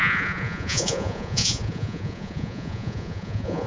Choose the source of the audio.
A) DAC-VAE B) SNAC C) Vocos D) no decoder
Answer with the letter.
C